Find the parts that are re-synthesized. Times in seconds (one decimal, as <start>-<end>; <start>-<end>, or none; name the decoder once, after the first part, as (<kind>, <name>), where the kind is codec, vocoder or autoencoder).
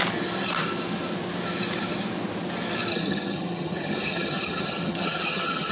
2.9-5.7 (vocoder, HiFi-GAN)